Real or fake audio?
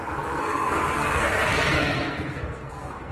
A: fake